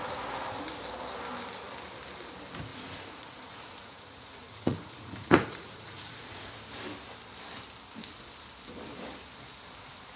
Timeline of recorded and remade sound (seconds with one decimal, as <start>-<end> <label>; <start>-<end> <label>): 0.0-2.7 recorded; 2.7-6.5 remade; 6.5-10.2 recorded